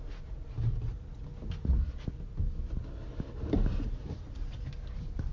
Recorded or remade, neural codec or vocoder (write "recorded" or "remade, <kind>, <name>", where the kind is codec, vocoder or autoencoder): recorded